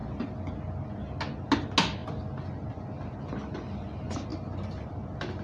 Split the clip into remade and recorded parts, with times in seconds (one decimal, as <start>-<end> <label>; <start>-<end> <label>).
0.0-5.4 recorded